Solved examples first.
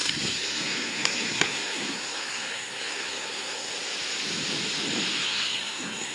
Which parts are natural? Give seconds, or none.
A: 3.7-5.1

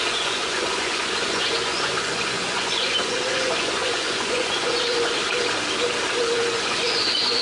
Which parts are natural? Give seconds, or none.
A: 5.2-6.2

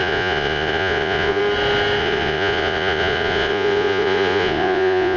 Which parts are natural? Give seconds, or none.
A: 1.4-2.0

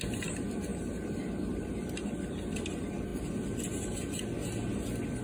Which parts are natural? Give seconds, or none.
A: 0.0-5.2

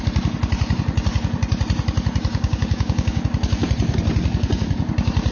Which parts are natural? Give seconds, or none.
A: 0.0-2.3; 3.2-5.3

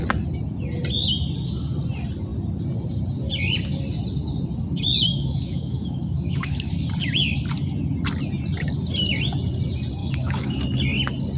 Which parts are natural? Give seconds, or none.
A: 0.0-5.1; 6.7-10.0; 10.6-11.4

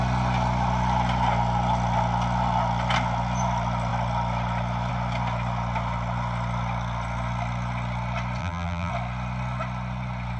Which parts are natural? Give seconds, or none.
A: 0.0-8.4; 8.9-10.4

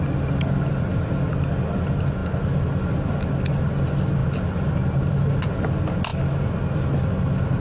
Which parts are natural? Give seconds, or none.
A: 0.0-7.6